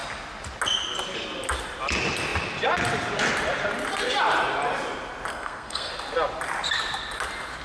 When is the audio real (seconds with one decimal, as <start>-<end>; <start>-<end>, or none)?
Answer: 0.0-5.3; 5.9-7.6